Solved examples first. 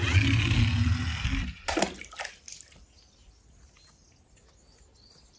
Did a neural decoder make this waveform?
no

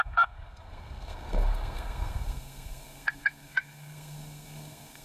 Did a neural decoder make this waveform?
yes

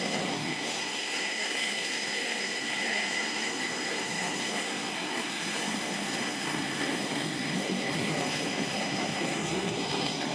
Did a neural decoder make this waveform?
yes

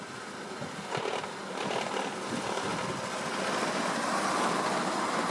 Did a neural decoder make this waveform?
no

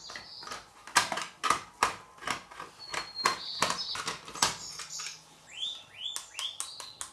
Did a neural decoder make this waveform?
no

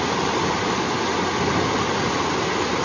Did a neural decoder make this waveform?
no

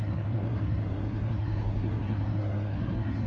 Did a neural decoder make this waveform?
yes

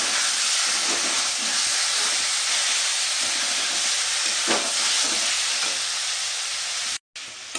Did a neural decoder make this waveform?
no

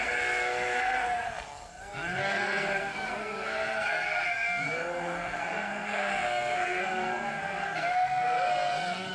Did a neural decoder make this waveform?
yes